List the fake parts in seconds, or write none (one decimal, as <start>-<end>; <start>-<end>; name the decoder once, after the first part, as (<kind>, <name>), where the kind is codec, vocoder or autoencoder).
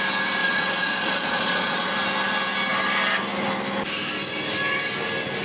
0.4-1.9 (vocoder, Vocos)